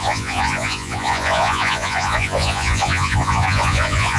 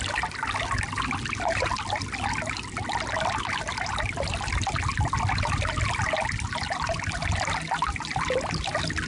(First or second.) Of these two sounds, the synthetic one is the first